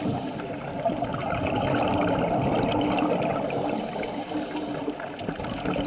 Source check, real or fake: real